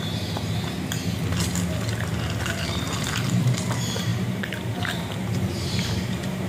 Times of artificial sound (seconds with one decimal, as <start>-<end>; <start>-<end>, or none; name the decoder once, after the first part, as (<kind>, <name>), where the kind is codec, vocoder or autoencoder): 0.0-0.4 (vocoder, BigVGAN v2); 3.3-6.5

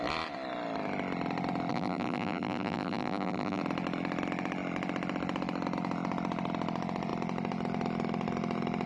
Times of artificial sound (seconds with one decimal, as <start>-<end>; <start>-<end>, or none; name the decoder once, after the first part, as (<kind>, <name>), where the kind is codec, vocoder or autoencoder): 1.7-3.6 (vocoder, BigVGAN v2)

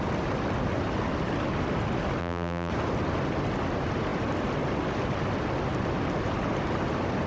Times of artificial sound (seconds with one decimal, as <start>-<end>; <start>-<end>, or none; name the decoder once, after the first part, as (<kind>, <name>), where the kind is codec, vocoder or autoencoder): 2.2-2.7 (vocoder, BigVGAN v2)

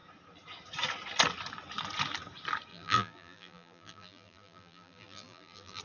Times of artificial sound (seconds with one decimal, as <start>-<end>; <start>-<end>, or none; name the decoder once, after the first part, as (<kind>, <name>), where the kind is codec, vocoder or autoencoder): 2.7-5.8 (vocoder, BigVGAN v2)